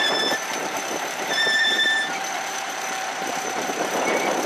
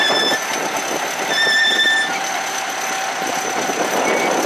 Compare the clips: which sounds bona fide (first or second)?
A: second